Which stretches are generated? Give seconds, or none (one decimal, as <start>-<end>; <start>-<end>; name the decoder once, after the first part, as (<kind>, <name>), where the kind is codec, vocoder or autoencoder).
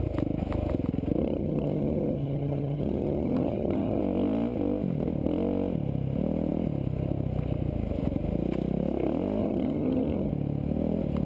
1.2-4.0 (vocoder, HiFi-GAN); 9.4-10.3